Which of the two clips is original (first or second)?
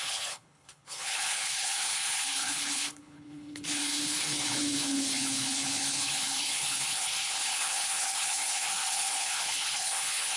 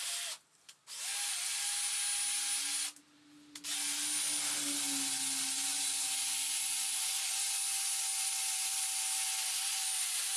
second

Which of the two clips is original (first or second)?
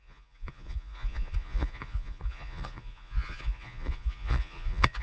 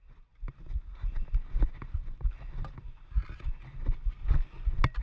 second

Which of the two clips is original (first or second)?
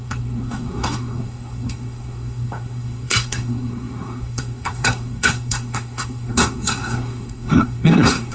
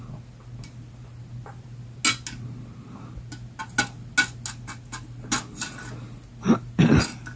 second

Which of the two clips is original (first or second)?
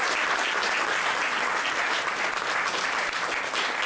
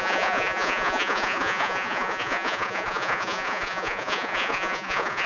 first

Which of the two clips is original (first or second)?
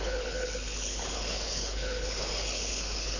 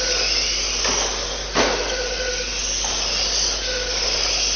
second